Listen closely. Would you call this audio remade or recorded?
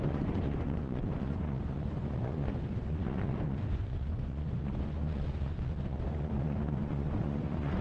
remade